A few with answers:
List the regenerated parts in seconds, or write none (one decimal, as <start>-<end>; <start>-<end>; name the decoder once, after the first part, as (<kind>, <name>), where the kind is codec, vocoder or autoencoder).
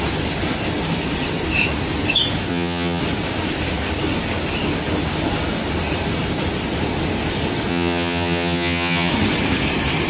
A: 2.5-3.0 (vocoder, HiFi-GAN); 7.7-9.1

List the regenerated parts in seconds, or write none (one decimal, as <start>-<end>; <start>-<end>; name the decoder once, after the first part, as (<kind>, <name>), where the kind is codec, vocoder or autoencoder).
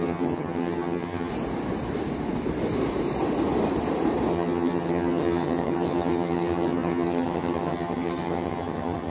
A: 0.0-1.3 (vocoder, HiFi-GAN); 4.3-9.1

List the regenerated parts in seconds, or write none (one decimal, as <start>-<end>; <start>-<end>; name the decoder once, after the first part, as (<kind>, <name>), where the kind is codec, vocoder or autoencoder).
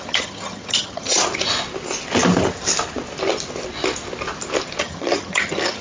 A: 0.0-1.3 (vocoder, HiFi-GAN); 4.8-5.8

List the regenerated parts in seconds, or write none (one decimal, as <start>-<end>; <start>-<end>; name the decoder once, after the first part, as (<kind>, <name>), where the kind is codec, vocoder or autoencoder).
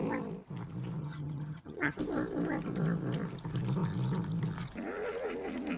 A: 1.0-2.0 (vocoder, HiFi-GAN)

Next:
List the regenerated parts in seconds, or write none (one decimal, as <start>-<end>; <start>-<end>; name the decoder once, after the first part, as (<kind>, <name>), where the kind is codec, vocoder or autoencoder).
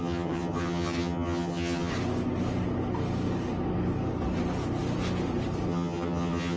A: 0.0-1.9 (vocoder, HiFi-GAN); 5.7-6.6